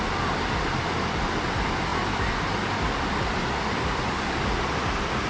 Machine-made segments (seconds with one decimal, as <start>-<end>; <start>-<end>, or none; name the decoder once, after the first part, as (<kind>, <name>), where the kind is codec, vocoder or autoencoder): 1.9-5.3 (vocoder, BigVGAN v2)